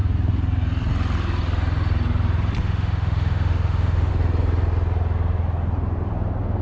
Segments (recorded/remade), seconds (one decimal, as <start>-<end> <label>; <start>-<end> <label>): 0.0-2.6 recorded; 2.6-4.1 remade; 4.1-6.6 recorded